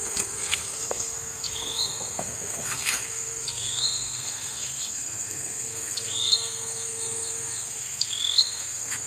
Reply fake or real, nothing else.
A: fake